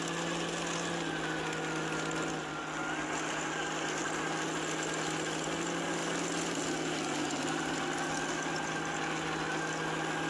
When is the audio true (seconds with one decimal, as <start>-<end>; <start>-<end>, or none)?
0.0-10.3